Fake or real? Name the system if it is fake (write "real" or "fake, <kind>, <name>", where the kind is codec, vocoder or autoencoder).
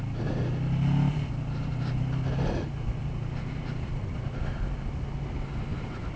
real